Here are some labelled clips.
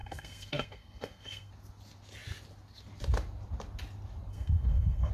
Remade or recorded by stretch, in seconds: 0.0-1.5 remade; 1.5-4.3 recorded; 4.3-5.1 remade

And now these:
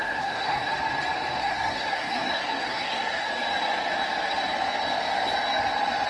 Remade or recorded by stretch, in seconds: 0.0-0.7 remade; 0.7-1.4 recorded; 1.4-3.3 remade; 3.3-6.1 recorded

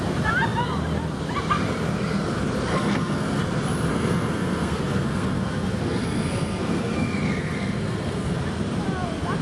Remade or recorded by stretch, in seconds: 0.0-2.7 recorded; 2.7-3.4 remade; 3.4-3.9 recorded; 3.9-8.4 remade; 8.4-9.4 recorded